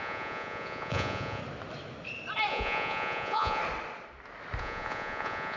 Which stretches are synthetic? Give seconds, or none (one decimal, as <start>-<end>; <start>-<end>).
0.0-1.4; 2.5-3.6; 4.6-5.6